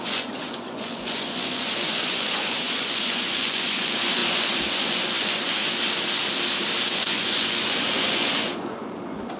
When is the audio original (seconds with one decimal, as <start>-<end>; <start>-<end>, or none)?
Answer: 5.6-6.9